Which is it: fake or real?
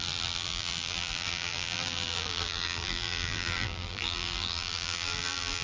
fake